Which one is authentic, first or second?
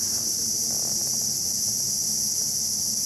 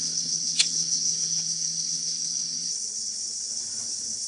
first